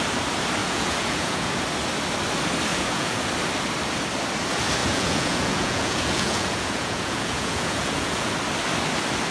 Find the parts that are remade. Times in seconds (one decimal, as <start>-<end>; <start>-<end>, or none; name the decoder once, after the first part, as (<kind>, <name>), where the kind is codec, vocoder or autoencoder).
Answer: 0.6-1.5 (vocoder, Vocos); 2.7-3.2; 4.8-8.3

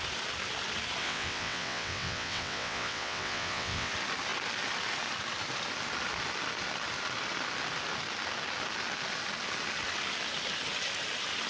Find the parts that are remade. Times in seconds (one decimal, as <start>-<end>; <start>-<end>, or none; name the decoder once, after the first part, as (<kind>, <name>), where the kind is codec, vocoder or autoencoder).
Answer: 1.0-3.9 (vocoder, WaveNeXt)

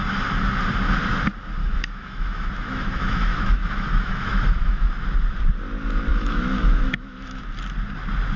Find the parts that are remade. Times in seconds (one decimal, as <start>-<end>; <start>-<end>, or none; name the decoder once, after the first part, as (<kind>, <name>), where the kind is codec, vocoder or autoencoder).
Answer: 1.6-4.9 (autoencoder, DAC-VAE); 6.1-7.4